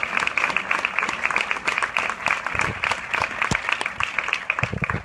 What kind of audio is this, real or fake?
real